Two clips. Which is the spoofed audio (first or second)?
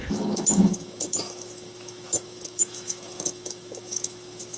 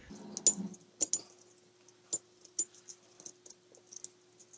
first